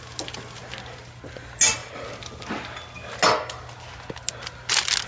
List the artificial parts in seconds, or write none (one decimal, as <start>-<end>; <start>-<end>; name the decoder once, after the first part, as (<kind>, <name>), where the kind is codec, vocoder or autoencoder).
none